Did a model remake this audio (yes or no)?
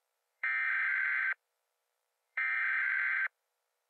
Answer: yes